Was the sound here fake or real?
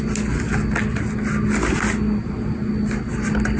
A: real